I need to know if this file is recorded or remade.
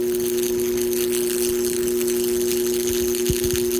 recorded